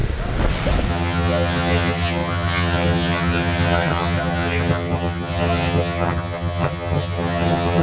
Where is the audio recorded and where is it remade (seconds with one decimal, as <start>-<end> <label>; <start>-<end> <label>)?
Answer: 0.0-0.9 recorded; 0.9-7.8 remade